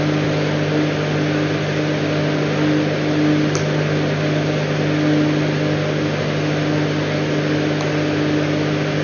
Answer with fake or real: real